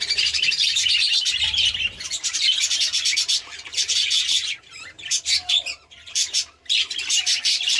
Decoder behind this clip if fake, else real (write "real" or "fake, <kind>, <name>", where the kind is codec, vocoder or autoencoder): fake, vocoder, BigVGAN v2